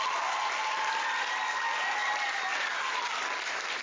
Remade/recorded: recorded